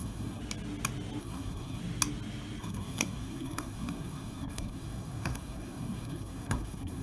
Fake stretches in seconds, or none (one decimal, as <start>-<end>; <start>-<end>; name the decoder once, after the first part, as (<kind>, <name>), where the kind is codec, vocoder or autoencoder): 0.0-0.4 (codec, SNAC); 1.2-1.8; 2.6-7.0